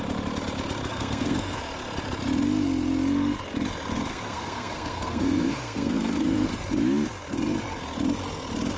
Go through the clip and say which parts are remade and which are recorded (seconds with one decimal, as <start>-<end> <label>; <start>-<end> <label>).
0.0-0.9 recorded; 0.9-1.6 remade; 1.6-4.1 recorded; 4.1-6.5 remade; 6.5-8.8 recorded